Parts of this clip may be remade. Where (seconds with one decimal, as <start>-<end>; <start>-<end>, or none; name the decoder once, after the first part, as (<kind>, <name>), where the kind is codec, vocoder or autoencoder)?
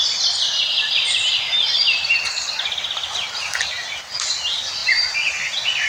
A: 4.8-5.3 (vocoder, BigVGAN v2)